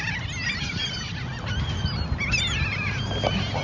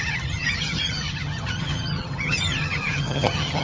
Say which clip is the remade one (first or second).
second